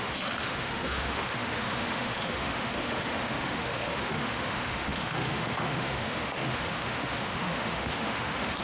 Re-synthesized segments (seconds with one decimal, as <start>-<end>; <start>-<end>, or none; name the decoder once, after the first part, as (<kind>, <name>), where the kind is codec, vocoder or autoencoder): 0.0-8.6 (autoencoder, DAC-VAE)